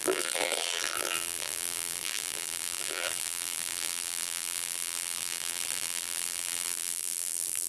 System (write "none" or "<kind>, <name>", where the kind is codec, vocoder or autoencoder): vocoder, BigVGAN v2